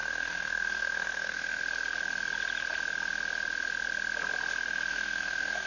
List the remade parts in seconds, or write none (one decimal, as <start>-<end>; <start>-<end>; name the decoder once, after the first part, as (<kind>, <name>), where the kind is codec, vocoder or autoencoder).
0.0-1.6 (codec, SNAC); 4.9-5.7